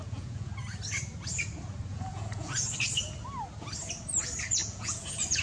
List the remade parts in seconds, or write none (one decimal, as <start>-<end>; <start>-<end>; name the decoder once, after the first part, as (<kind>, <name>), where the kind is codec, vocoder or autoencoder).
0.0-0.5 (vocoder, Vocos); 1.9-2.7; 4.6-5.4